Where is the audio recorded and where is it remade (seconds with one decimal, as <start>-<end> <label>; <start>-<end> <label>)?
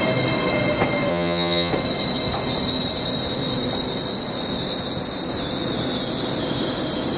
0.0-1.1 recorded; 1.1-1.7 remade; 1.7-7.2 recorded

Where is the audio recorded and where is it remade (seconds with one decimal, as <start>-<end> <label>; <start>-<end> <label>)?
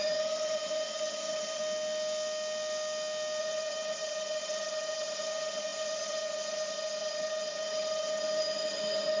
0.0-1.6 remade; 1.6-3.4 recorded; 3.4-9.2 remade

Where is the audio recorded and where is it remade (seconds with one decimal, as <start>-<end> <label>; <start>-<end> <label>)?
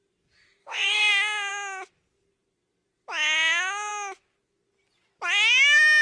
0.0-0.6 recorded; 0.6-1.1 remade; 1.1-6.0 recorded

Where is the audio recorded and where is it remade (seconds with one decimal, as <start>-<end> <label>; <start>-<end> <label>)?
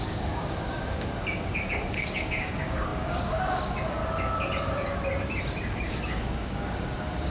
0.0-4.0 remade; 4.0-5.7 recorded; 5.7-7.3 remade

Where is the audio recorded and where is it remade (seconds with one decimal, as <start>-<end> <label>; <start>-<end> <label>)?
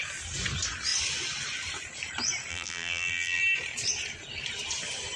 0.0-2.5 recorded; 2.5-3.4 remade; 3.4-5.2 recorded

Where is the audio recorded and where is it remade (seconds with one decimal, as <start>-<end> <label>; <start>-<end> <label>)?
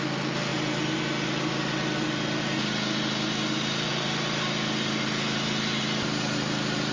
0.0-6.9 recorded